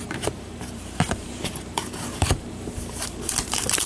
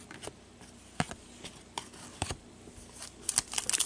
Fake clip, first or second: first